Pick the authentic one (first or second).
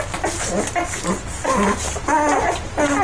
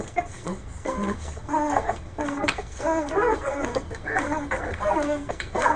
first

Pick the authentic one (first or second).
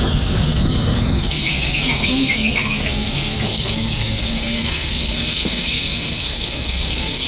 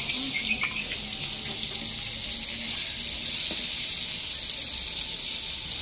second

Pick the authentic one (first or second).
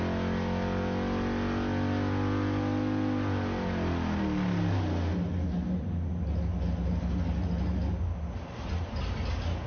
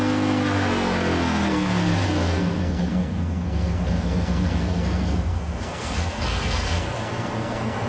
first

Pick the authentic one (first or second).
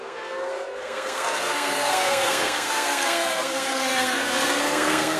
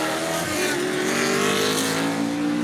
second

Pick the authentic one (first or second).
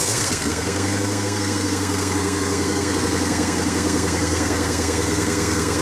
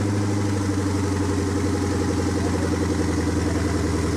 second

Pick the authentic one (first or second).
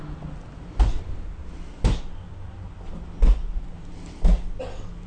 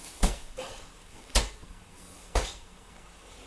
first